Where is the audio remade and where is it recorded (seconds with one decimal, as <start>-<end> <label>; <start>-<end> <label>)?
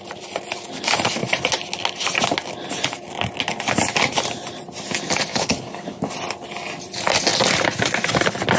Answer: 0.0-5.3 recorded; 5.3-6.1 remade; 6.1-8.6 recorded